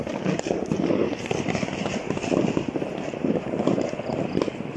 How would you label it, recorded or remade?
recorded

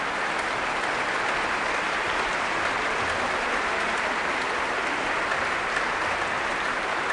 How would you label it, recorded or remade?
recorded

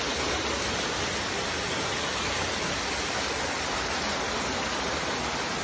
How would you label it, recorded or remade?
recorded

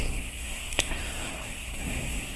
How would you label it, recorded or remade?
remade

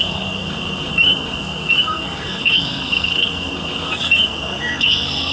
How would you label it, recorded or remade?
remade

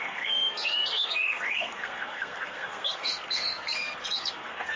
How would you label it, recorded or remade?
remade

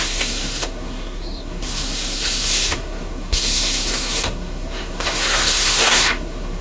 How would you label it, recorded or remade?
remade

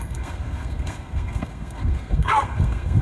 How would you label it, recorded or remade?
remade